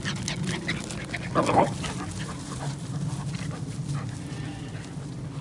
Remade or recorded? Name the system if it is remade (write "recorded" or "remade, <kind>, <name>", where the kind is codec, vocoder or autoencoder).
recorded